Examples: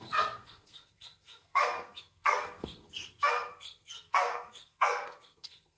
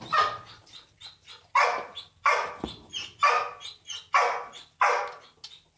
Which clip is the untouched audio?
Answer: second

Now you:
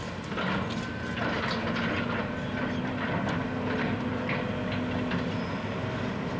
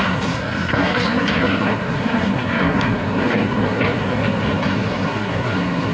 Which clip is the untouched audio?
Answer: first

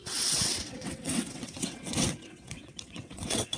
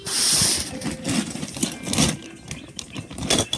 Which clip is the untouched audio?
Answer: second